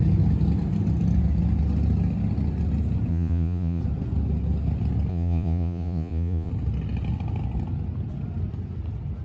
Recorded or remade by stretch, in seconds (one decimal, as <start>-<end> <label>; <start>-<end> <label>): 0.0-3.1 recorded; 3.1-3.8 remade; 3.8-5.1 recorded; 5.1-6.5 remade; 6.5-9.2 recorded